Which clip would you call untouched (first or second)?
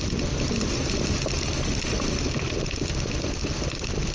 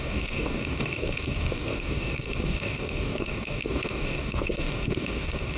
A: first